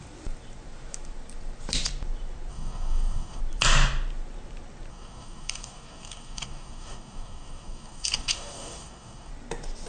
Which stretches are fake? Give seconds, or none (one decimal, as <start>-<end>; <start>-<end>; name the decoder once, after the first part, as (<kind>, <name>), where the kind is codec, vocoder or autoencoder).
2.5-3.4 (codec, DAC); 4.9-9.3